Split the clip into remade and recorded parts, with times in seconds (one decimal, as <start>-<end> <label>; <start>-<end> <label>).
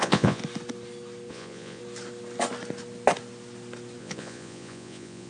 0.0-0.4 remade; 0.4-1.3 recorded; 1.3-1.8 remade; 1.8-4.0 recorded; 4.0-5.3 remade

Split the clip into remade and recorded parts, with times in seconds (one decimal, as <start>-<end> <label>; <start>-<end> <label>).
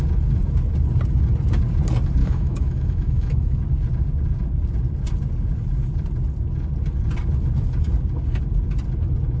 0.0-2.2 recorded; 2.2-3.6 remade; 3.6-9.4 recorded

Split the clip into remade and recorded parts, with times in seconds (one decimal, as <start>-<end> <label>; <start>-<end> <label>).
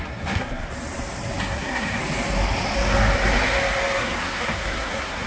0.0-0.6 remade; 0.6-1.4 recorded; 1.4-2.0 remade; 2.0-4.0 recorded; 4.0-5.3 remade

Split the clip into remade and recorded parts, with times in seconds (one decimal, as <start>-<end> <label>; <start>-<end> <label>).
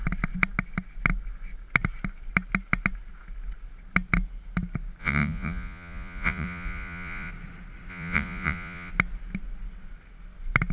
0.0-5.0 recorded; 5.0-7.3 remade; 7.3-7.9 recorded; 7.9-8.9 remade; 8.9-10.7 recorded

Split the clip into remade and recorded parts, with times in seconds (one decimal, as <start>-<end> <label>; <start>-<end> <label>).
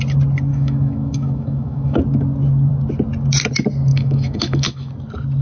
0.0-0.5 recorded; 0.5-2.0 remade; 2.0-3.9 recorded; 3.9-4.9 remade; 4.9-5.4 recorded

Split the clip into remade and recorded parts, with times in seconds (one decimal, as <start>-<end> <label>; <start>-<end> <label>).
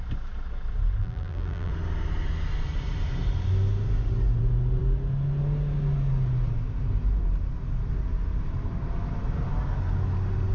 0.0-1.0 recorded; 1.0-1.7 remade; 1.7-10.5 recorded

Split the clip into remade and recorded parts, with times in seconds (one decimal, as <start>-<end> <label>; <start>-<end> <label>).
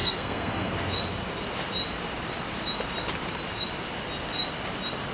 0.0-0.7 remade; 0.7-5.1 recorded